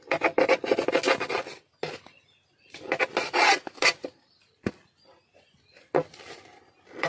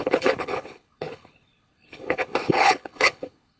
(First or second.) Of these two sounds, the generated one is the second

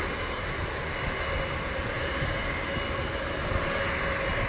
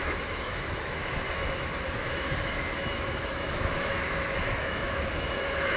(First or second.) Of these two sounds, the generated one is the second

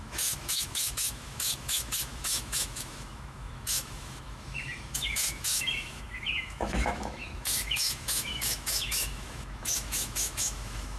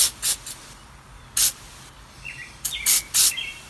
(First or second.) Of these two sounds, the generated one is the first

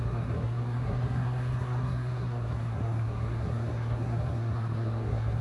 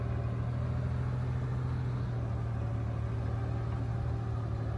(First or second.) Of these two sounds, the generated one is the first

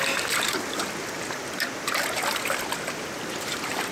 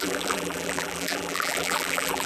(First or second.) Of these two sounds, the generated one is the second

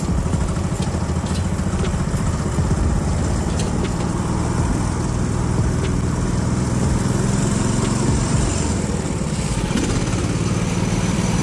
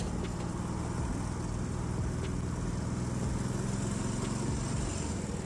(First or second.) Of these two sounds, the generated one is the first